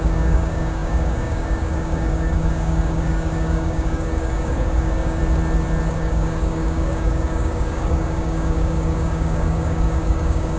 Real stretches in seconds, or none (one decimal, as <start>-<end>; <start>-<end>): 5.2-5.9

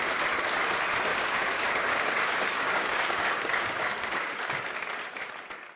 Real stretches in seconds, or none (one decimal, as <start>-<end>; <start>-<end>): 0.0-1.1; 4.6-5.8

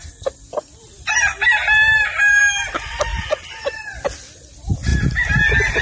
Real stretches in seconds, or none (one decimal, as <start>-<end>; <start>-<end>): 4.9-5.8

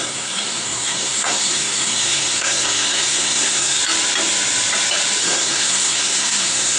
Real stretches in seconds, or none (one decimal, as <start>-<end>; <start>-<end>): 3.8-5.2

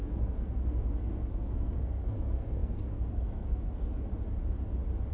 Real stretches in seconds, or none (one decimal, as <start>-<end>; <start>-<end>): 4.1-5.1